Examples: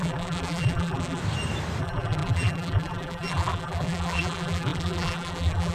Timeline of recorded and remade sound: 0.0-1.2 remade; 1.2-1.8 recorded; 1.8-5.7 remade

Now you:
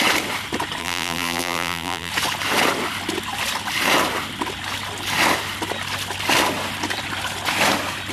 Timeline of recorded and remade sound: 0.0-0.8 recorded; 0.8-2.1 remade; 2.1-8.1 recorded

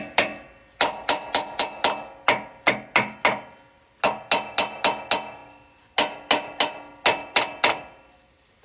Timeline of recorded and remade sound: 0.0-8.6 recorded

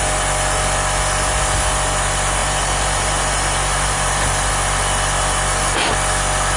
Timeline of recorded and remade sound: 0.0-2.4 recorded; 2.4-4.5 remade; 4.5-6.6 recorded

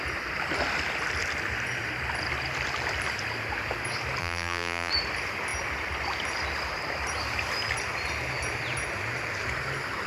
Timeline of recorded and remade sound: 0.0-4.2 recorded; 4.2-4.9 remade; 4.9-10.1 recorded